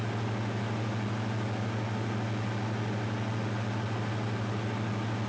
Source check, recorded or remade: recorded